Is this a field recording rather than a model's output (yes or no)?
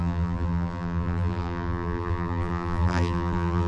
no